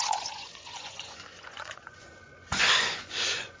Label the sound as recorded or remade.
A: remade